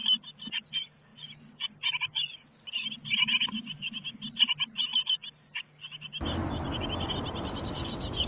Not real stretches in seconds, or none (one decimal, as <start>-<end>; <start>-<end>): none